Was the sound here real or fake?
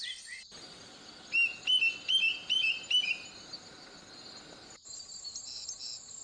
real